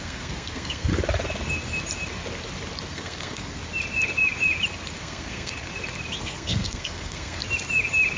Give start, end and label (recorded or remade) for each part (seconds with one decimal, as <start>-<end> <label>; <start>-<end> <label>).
0.0-0.9 remade; 0.9-2.9 recorded; 2.9-3.6 remade; 3.6-5.0 recorded; 5.0-5.7 remade; 5.7-6.2 recorded; 6.2-7.4 remade; 7.4-8.2 recorded